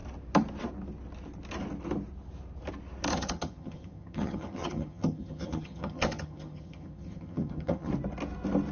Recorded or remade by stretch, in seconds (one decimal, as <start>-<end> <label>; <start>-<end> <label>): 0.0-3.1 recorded; 3.1-7.9 remade; 7.9-8.7 recorded